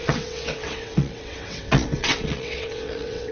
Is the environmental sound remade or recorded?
remade